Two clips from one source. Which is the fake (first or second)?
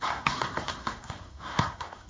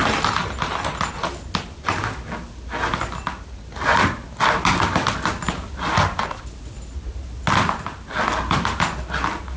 first